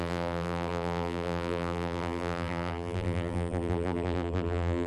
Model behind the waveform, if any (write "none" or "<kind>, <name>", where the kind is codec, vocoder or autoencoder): vocoder, BigVGAN v2